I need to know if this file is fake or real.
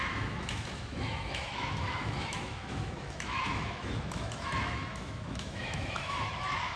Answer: fake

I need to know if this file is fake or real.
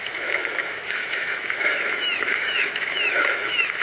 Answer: fake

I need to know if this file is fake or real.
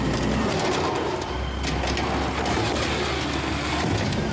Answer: real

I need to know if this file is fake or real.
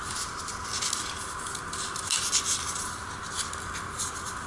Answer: real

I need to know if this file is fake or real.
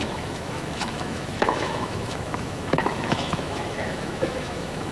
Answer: fake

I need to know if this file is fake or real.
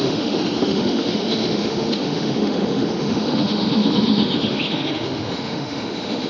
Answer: fake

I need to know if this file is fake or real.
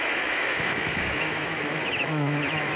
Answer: fake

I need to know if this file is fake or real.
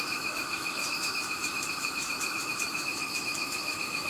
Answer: fake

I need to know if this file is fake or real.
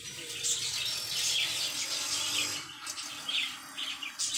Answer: real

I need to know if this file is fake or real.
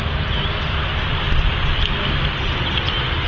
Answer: real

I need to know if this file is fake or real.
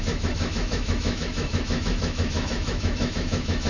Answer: fake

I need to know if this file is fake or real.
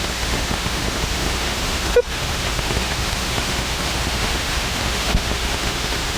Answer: fake